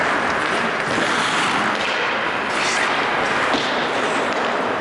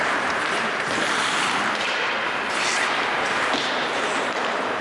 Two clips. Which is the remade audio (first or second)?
second